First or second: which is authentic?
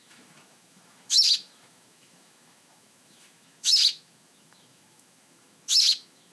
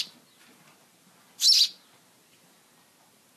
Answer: second